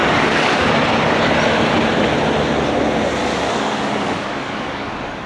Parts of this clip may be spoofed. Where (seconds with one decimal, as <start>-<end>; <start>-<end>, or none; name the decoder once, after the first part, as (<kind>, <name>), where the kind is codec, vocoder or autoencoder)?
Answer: 0.0-0.7 (codec, DAC); 3.2-5.3